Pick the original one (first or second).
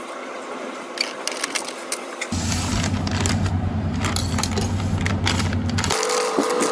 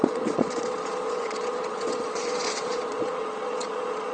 first